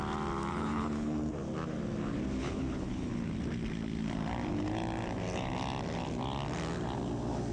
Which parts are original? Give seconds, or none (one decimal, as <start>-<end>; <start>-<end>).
0.0-0.5; 1.3-2.4; 3.1-7.5